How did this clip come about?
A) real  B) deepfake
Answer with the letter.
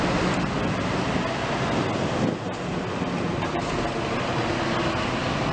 A